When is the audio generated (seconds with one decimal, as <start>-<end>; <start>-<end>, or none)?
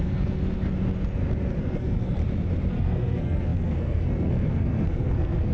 0.0-0.4; 1.6-2.2; 2.7-5.5